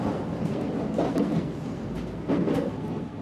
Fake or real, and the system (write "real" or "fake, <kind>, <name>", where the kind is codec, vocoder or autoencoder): fake, codec, SNAC